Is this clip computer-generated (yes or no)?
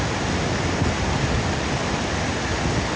no